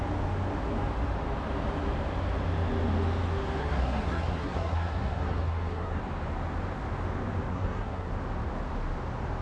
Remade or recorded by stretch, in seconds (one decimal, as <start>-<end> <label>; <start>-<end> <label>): 0.0-3.6 recorded; 3.6-6.0 remade; 6.0-7.5 recorded; 7.5-8.1 remade; 8.1-9.4 recorded